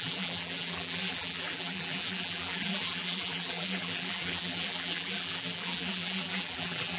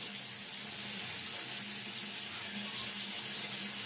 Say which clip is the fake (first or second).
first